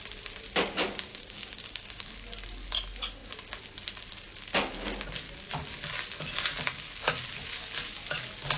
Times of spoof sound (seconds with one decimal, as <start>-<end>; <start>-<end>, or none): 1.1-2.0